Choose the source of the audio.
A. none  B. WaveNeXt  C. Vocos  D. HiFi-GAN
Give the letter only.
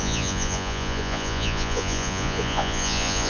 C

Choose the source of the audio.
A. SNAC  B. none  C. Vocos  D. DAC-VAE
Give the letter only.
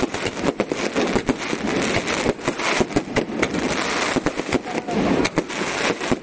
B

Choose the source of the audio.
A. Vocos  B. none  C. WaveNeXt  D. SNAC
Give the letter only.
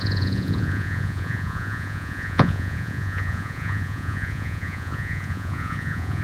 A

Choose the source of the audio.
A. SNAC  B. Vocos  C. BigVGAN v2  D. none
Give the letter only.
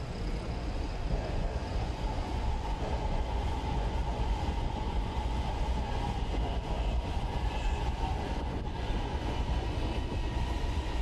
B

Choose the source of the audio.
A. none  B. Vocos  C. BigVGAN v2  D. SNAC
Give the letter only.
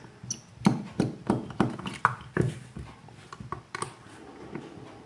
A